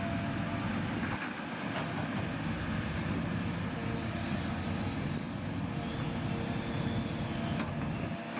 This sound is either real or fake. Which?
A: real